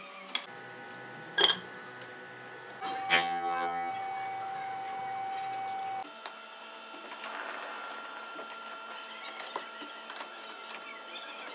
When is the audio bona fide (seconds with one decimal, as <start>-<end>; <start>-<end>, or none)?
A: 0.0-3.1; 3.9-11.5